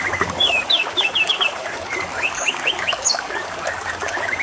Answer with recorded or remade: remade